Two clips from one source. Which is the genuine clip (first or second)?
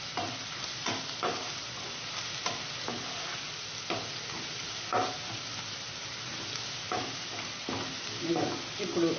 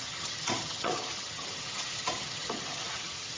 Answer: first